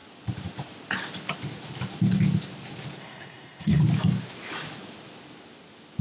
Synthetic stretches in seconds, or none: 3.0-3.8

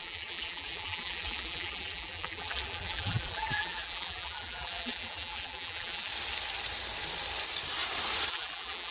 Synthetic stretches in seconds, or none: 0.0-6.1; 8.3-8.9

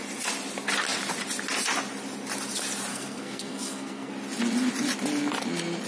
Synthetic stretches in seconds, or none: 2.9-4.1

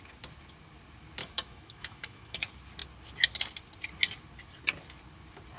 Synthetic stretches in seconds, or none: 1.2-2.4

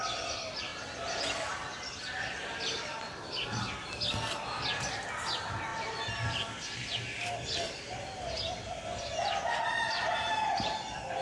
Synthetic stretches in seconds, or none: none

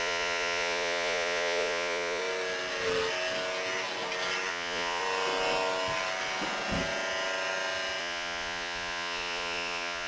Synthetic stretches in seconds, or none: 0.0-2.2; 4.5-5.0; 8.0-10.1